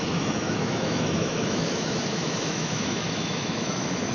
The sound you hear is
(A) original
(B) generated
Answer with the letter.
B